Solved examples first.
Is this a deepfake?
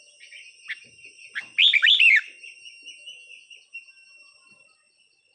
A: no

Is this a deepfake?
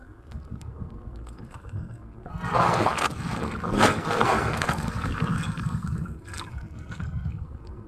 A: yes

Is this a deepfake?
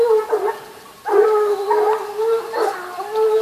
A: no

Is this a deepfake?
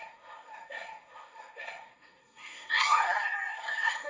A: yes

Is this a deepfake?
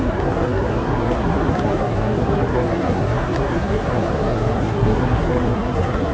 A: yes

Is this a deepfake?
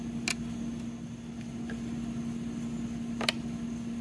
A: no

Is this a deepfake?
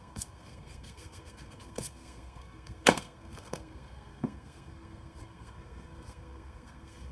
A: yes